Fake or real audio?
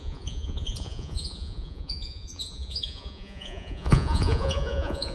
fake